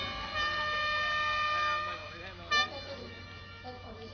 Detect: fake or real real